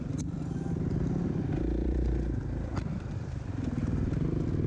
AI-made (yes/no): yes